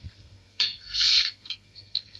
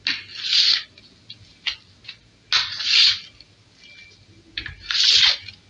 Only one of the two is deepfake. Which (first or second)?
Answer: first